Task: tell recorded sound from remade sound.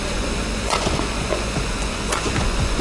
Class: remade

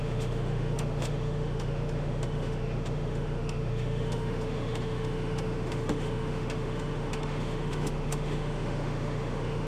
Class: remade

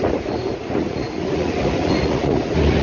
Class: remade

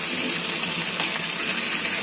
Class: recorded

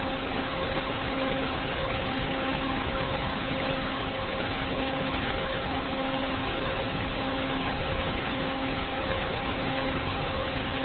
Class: remade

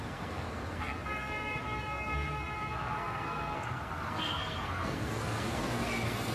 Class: remade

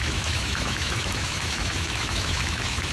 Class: remade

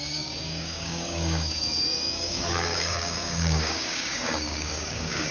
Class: remade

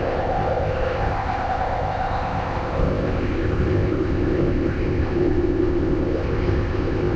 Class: remade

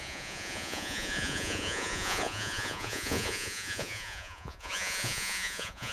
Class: remade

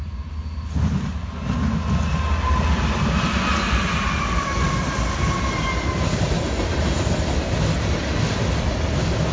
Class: recorded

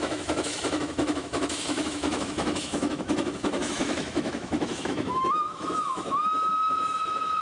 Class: remade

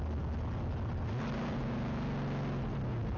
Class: recorded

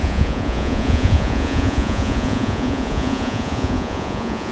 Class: remade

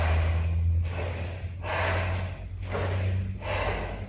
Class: recorded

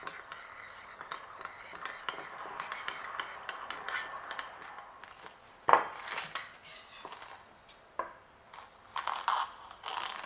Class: recorded